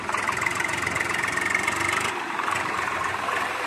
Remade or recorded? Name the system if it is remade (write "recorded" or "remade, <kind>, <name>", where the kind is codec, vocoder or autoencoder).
remade, vocoder, BigVGAN v2